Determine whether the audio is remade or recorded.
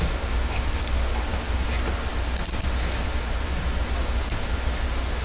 recorded